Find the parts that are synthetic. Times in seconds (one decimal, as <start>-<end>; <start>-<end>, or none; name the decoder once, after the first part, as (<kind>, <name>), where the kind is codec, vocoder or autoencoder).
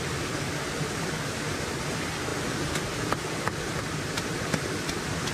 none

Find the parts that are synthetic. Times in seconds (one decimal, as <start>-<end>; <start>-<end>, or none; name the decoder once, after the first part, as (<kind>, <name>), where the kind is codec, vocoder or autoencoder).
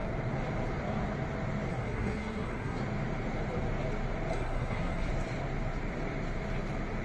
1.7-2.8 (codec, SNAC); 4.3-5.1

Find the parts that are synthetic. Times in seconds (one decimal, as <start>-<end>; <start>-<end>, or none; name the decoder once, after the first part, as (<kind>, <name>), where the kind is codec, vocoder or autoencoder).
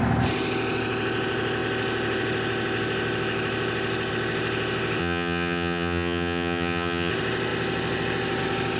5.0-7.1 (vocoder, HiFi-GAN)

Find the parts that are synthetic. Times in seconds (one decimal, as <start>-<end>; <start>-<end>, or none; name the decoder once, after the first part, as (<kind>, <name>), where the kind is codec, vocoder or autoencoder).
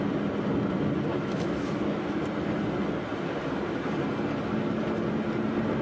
1.1-2.2 (autoencoder, DAC-VAE)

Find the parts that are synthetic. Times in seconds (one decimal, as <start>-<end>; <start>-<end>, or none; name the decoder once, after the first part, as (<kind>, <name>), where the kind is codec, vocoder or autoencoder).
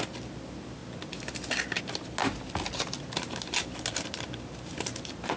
none